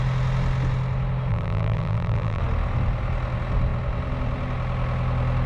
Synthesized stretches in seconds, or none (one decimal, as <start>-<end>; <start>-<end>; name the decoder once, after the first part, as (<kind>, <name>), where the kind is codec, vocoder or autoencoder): 1.3-2.4 (vocoder, BigVGAN v2)